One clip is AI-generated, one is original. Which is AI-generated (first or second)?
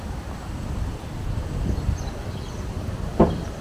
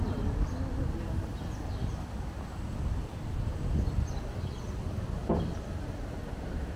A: first